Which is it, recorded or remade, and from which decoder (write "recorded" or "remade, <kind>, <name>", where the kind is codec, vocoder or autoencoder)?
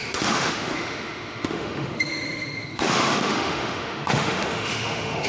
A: remade, autoencoder, DAC-VAE